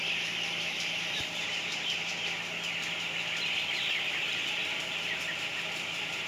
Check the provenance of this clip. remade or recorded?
recorded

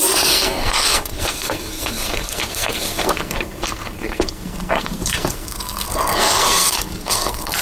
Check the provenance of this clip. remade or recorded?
remade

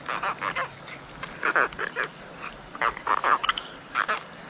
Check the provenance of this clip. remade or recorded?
recorded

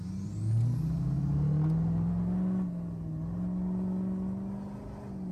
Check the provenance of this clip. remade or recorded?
recorded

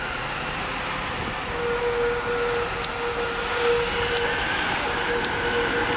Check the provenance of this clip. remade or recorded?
recorded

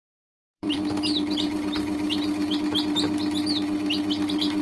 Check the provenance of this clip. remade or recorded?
remade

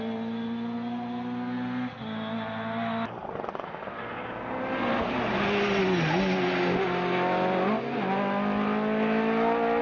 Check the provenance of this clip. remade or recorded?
recorded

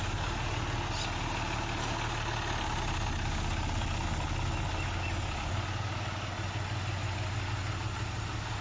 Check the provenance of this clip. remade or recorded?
recorded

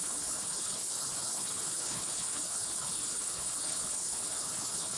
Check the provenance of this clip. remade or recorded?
remade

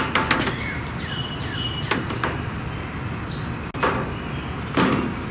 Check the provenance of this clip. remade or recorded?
recorded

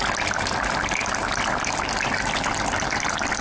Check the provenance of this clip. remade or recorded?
recorded